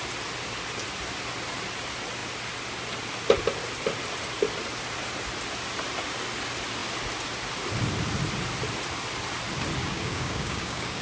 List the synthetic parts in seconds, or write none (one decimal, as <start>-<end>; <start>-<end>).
9.8-11.0